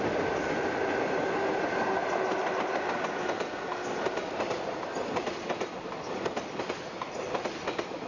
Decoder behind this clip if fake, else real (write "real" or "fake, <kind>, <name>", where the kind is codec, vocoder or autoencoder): real